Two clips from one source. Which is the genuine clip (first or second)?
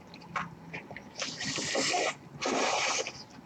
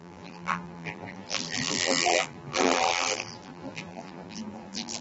first